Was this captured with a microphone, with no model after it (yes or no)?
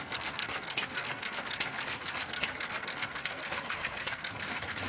no